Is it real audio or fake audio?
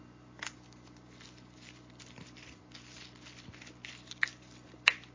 real